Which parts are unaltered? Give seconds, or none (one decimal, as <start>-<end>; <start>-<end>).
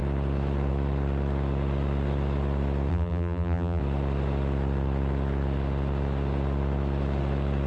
0.0-2.9; 3.8-7.7